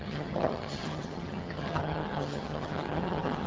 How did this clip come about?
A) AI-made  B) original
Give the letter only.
A